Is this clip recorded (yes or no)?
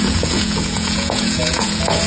no